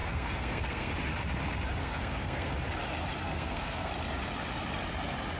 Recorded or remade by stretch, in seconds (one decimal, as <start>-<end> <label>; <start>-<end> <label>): 0.0-0.9 remade; 0.9-1.8 recorded; 1.8-2.5 remade; 2.5-3.2 recorded; 3.2-3.9 remade; 3.9-5.4 recorded